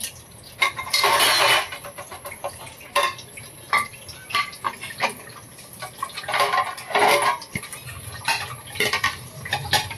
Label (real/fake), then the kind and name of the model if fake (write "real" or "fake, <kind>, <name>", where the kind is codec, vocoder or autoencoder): real